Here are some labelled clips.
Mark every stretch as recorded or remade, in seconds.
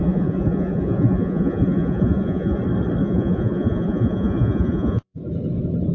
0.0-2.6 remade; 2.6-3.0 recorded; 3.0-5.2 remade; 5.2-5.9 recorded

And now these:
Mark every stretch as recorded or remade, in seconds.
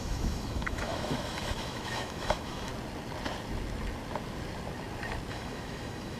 0.0-2.7 remade; 2.7-5.3 recorded; 5.3-6.2 remade